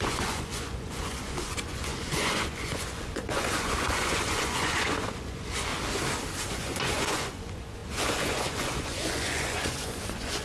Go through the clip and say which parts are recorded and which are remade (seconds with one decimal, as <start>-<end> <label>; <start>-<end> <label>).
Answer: 0.0-5.7 remade; 5.7-6.5 recorded; 6.5-10.4 remade